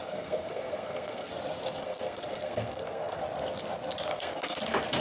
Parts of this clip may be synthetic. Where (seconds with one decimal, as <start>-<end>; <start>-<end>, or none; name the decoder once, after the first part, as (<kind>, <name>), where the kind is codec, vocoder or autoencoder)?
0.0-1.3 (codec, SNAC); 1.8-3.2; 4.1-4.6